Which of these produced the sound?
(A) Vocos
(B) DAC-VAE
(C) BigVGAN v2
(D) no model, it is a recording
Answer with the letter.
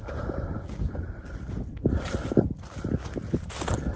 C